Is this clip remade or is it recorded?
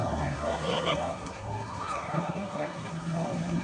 remade